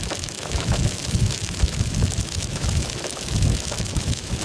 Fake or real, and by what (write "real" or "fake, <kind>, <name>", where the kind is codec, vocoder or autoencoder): fake, autoencoder, DAC-VAE